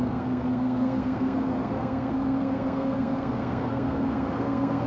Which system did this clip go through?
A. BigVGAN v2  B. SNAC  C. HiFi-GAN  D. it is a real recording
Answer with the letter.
B